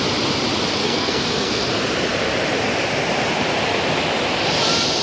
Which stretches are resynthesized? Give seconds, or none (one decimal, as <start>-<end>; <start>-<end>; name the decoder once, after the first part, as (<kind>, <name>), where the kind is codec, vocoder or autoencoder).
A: 0.8-1.7 (codec, SNAC)